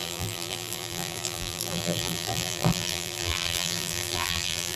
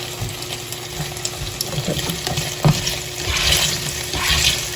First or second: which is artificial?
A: first